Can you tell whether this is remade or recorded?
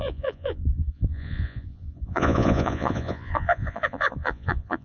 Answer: remade